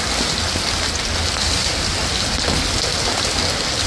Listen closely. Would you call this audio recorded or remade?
recorded